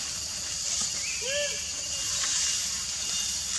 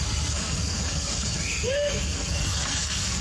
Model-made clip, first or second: second